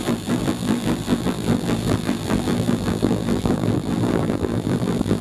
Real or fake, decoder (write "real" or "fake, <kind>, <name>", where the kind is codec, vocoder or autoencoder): fake, vocoder, BigVGAN v2